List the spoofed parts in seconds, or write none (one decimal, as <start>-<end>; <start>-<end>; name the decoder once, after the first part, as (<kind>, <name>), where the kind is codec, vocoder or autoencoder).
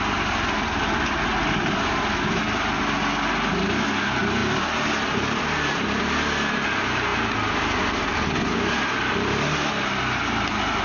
none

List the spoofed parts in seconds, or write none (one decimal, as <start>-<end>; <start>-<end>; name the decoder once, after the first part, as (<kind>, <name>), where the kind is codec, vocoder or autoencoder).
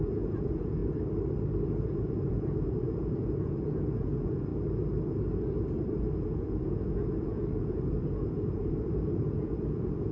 0.0-0.8 (vocoder, Vocos); 1.8-4.5; 6.0-10.1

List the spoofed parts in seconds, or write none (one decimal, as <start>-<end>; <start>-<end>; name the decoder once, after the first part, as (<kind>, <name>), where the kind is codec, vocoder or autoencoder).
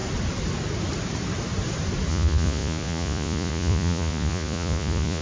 2.1-5.2 (vocoder, Vocos)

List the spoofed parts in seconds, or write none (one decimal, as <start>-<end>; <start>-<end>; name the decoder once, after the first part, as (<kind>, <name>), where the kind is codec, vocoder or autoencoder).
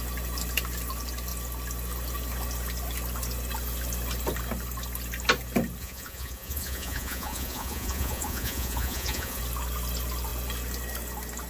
5.8-9.4 (vocoder, Vocos)